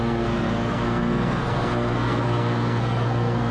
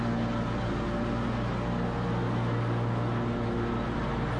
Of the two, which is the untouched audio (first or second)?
second